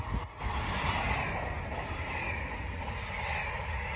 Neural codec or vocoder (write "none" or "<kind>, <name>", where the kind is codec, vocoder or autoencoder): none